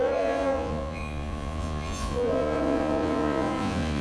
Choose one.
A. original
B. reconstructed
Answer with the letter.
B